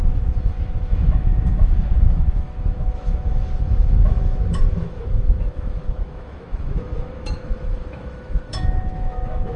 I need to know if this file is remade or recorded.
remade